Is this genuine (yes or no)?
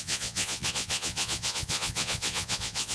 no